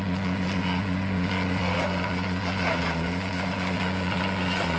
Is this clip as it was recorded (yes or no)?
no